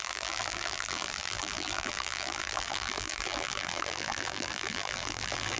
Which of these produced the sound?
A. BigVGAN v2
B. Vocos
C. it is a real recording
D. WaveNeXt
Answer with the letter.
A